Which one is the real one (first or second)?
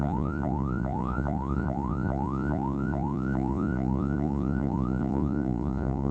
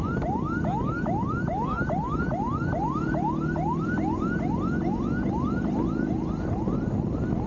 second